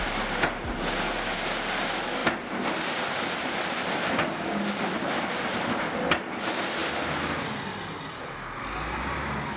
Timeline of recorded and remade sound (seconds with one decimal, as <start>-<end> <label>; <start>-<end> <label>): 0.0-9.6 recorded